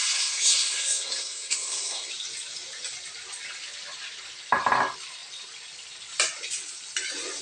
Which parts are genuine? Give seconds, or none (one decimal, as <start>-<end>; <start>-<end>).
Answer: 2.1-7.4